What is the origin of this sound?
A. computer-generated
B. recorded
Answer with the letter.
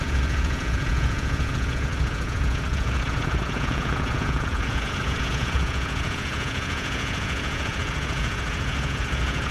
A